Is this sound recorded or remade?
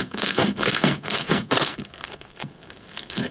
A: remade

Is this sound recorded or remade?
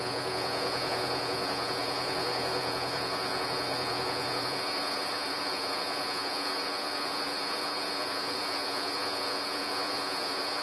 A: remade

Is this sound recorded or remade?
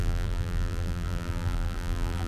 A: remade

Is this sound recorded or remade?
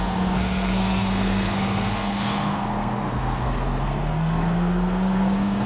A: remade